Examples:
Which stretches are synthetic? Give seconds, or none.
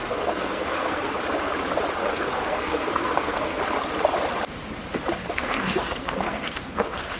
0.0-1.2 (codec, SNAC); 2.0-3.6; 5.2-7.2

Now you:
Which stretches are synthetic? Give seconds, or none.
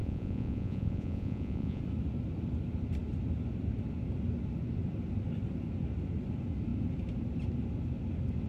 0.0-1.8 (vocoder, Vocos)